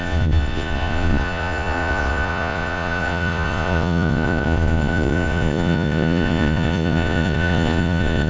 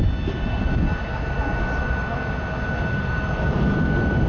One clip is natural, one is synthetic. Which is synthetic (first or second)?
first